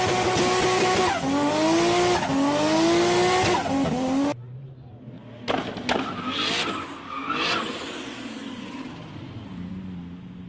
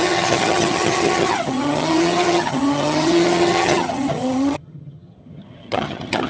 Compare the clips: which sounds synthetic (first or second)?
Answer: second